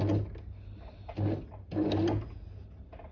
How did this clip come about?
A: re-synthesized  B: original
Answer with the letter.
B